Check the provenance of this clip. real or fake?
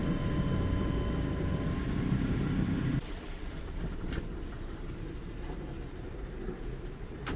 fake